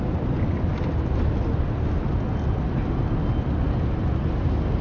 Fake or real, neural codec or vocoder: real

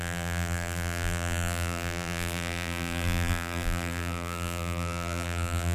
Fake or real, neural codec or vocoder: fake, vocoder, BigVGAN v2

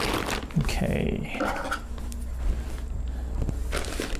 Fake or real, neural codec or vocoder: real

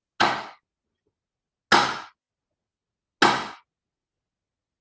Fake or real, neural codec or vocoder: real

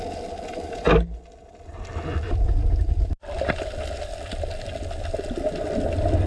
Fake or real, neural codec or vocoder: real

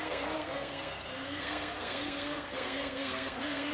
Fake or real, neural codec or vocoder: fake, codec, SNAC